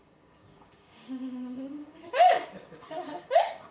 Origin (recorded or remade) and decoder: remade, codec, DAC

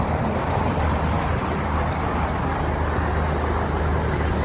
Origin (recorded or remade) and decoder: recorded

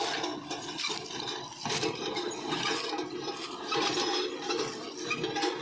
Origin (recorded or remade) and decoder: recorded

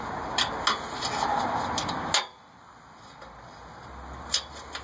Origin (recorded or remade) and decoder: recorded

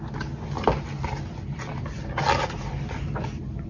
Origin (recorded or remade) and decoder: recorded